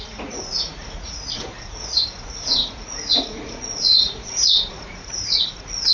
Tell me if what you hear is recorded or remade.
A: remade